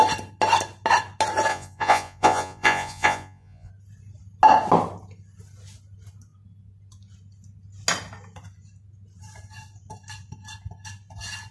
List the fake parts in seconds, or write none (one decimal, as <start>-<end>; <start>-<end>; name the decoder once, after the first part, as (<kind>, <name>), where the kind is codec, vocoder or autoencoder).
1.5-3.7 (vocoder, Vocos)